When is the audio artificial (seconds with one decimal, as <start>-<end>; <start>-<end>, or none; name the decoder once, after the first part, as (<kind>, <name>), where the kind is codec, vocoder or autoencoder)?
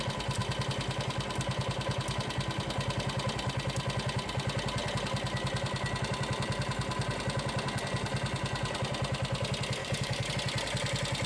9.8-10.3 (codec, DAC)